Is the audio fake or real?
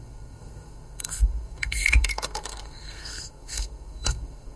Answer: fake